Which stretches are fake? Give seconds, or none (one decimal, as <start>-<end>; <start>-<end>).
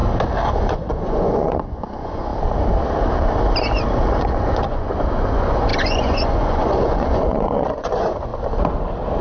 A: 0.6-2.3; 4.1-8.3